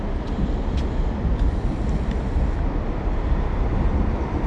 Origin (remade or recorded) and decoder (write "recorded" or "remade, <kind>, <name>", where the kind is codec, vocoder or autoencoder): recorded